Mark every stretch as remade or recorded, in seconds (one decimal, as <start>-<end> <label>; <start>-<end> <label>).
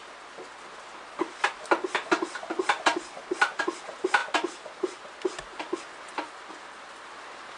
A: 0.0-7.6 recorded